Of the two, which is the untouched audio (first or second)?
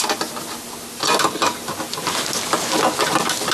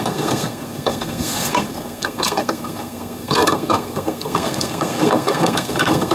first